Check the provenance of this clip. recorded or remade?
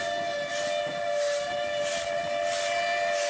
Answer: recorded